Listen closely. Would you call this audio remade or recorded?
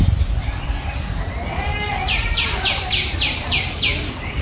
remade